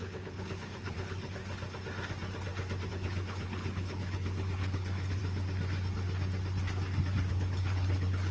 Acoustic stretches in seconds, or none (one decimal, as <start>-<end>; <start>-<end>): 1.4-2.9; 5.2-7.3